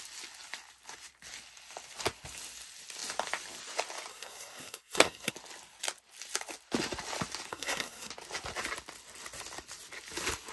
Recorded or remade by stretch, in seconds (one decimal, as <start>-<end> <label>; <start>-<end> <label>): 0.0-4.1 recorded; 4.1-5.3 remade; 5.3-7.5 recorded; 7.5-8.1 remade; 8.1-10.5 recorded